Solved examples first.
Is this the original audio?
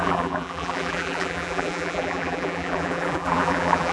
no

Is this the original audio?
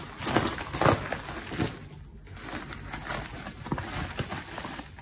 yes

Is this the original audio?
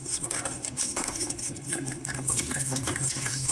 no